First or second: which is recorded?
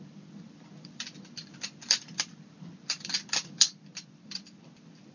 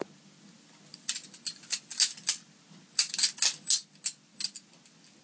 second